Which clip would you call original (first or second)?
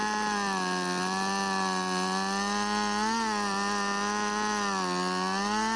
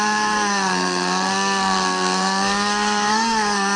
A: first